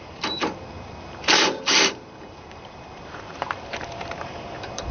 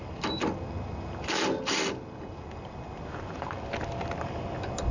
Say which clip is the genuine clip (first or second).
second